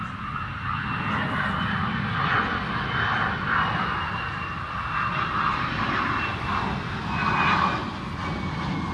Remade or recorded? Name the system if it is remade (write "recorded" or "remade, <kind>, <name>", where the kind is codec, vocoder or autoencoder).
recorded